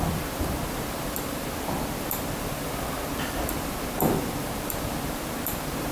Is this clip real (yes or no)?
no